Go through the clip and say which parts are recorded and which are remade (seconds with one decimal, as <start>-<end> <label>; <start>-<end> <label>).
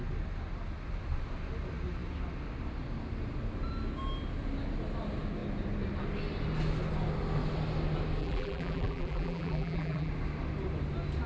0.0-8.2 recorded; 8.2-10.1 remade; 10.1-11.3 recorded